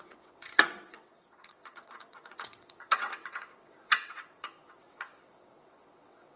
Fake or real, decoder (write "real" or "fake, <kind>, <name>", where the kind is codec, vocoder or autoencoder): fake, vocoder, WaveNeXt